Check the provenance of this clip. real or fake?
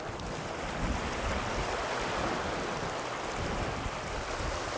real